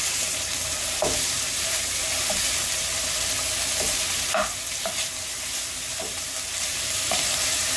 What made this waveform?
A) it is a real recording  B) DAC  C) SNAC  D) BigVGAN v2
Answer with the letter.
D